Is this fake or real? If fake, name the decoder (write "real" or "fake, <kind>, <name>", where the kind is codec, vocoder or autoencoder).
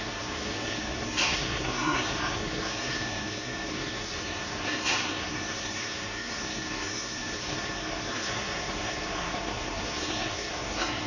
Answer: fake, codec, SNAC